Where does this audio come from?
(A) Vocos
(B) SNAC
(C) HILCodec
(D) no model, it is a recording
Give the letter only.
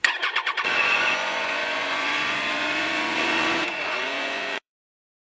A